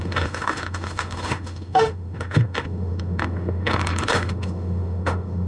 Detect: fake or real fake